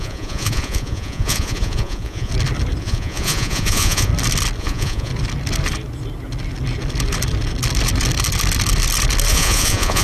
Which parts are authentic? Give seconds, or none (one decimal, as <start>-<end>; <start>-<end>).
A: 2.3-2.8; 4.1-4.6; 5.1-9.3